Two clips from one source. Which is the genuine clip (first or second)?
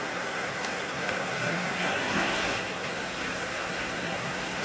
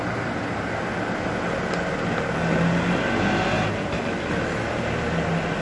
second